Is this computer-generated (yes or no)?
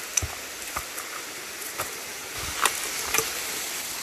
no